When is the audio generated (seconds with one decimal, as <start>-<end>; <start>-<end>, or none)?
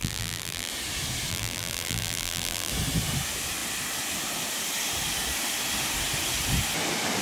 0.0-0.7; 1.3-2.7